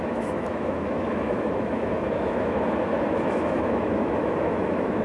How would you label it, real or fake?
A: fake